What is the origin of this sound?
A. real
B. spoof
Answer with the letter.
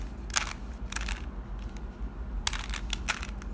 A